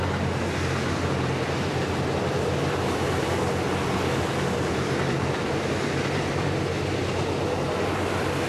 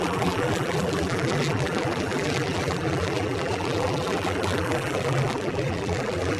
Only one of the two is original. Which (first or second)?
first